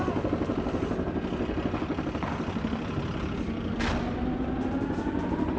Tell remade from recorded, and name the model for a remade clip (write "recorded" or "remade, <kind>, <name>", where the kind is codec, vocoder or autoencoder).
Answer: recorded